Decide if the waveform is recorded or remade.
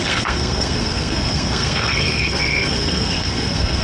remade